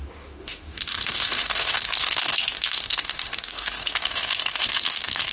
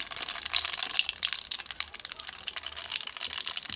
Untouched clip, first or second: second